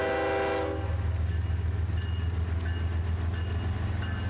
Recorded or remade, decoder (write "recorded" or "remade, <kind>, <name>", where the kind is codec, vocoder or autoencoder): recorded